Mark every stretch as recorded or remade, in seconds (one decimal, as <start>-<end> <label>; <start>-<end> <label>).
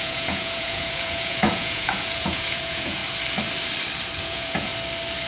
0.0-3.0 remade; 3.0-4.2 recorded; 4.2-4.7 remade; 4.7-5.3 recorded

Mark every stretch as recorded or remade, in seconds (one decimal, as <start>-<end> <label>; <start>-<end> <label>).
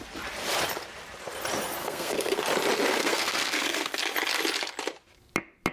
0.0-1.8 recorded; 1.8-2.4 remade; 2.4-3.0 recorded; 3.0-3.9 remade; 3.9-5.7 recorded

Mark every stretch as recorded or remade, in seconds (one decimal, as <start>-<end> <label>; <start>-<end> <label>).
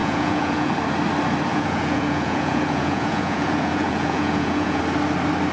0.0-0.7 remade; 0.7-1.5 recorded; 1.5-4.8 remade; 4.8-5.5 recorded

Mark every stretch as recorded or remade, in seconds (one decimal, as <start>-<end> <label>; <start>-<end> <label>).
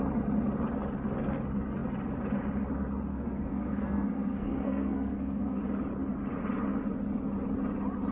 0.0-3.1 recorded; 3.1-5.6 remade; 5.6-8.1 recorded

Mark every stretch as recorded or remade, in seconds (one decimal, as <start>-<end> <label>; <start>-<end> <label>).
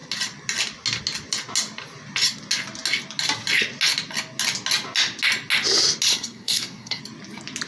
0.0-6.1 recorded; 6.1-7.0 remade; 7.0-7.7 recorded